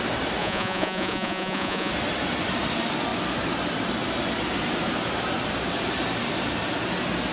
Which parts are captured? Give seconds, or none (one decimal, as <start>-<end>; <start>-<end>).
0.0-0.4; 1.9-7.3